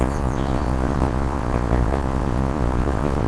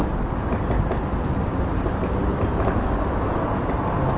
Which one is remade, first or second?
first